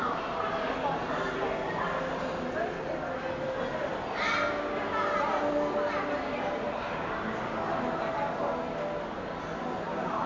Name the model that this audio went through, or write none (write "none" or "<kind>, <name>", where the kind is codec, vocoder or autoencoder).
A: none